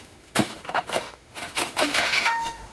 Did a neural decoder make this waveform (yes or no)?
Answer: yes